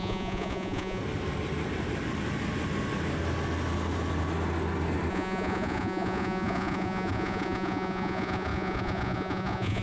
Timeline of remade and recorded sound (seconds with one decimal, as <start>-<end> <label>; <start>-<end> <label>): 0.0-1.0 remade; 1.0-5.1 recorded; 5.1-9.8 remade